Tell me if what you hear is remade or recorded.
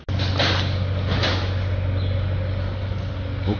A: recorded